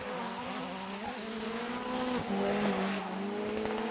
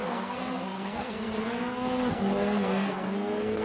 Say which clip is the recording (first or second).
first